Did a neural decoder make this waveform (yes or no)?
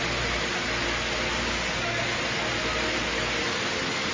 no